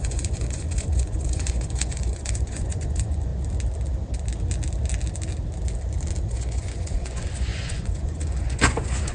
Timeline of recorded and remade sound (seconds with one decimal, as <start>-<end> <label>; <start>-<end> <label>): 0.0-3.3 remade; 3.3-6.3 recorded; 6.3-9.1 remade